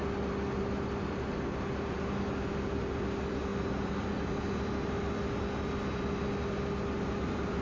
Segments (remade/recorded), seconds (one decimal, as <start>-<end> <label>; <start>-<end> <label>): 0.0-7.6 recorded